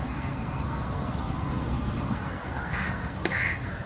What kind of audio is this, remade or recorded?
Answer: remade